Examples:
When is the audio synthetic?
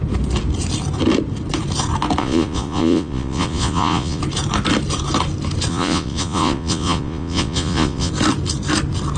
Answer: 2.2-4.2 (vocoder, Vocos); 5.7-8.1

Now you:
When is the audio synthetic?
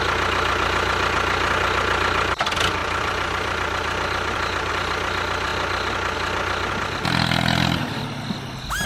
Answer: 2.8-4.4 (vocoder, BigVGAN v2)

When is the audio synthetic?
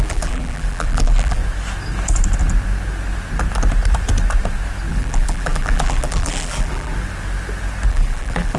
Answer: 0.0-1.4 (vocoder, BigVGAN v2); 4.9-6.9; 7.9-8.6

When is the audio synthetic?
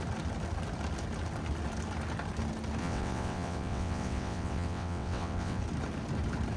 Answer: 2.8-5.6 (vocoder, WaveNeXt)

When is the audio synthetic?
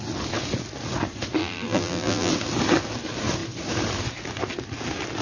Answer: 1.4-2.3 (vocoder, BigVGAN v2)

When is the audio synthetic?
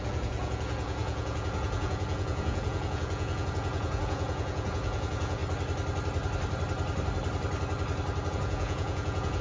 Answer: 0.0-5.4 (vocoder, Vocos); 8.3-9.4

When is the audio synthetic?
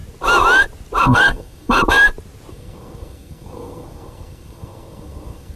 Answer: 1.0-1.8 (codec, SNAC); 2.5-5.6